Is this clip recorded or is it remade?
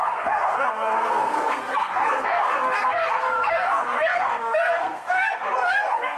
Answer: remade